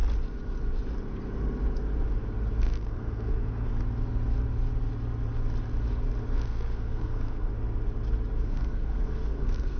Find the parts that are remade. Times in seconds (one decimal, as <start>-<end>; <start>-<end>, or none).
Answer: 2.6-3.7; 6.3-7.5; 8.4-9.8